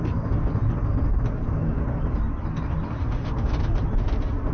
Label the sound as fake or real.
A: real